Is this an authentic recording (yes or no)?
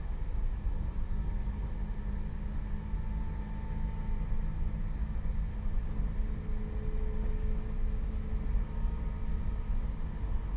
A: yes